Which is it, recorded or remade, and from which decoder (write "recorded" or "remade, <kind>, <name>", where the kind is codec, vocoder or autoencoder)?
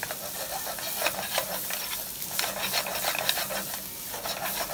recorded